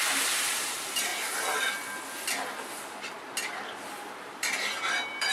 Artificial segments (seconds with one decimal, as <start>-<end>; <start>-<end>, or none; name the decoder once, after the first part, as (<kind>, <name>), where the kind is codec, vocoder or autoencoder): 0.0-1.1 (vocoder, BigVGAN v2); 4.2-5.3